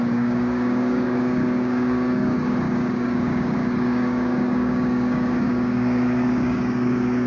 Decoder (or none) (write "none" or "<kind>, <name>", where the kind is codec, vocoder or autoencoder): codec, DAC